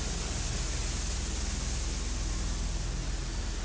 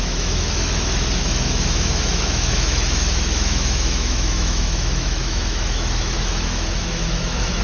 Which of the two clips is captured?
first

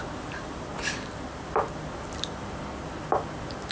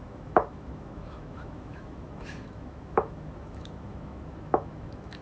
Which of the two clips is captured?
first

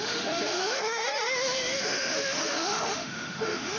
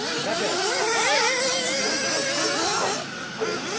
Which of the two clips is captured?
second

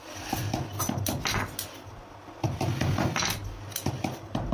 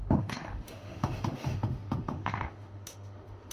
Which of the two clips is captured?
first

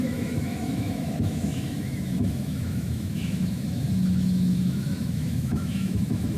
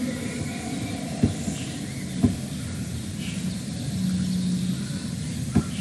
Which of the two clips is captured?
second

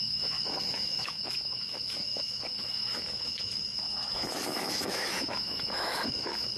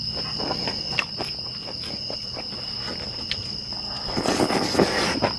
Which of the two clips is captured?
second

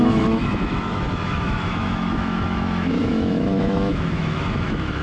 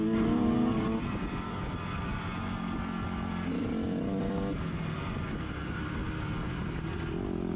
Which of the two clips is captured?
second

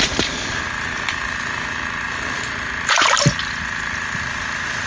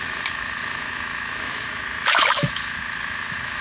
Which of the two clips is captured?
first